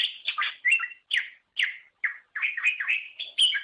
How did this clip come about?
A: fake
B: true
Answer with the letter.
B